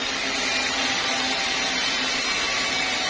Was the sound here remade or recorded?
recorded